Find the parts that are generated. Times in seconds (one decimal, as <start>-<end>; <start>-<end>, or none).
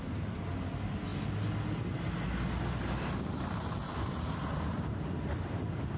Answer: none